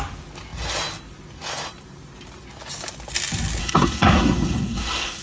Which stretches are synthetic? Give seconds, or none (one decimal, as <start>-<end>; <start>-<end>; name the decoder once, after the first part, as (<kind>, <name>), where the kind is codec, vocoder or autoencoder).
3.6-5.2 (codec, SNAC)